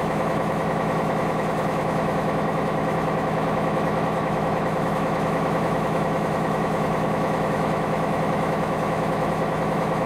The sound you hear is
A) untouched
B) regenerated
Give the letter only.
B